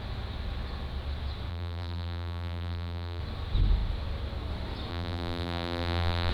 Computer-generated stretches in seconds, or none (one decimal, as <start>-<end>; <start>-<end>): 1.5-3.2; 4.9-6.3